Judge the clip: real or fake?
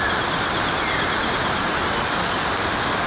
real